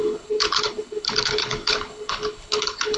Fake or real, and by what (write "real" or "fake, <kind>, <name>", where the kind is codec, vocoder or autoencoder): fake, codec, HILCodec